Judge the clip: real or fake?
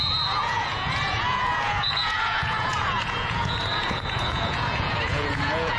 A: fake